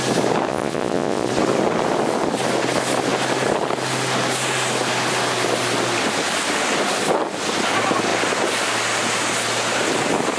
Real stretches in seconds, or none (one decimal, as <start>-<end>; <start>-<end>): 0.0-0.5; 1.3-10.4